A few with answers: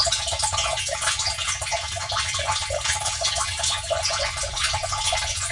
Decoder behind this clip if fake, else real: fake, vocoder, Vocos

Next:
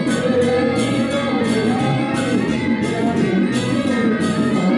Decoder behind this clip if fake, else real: fake, vocoder, Vocos